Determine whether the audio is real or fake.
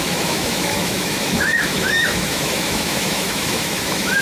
fake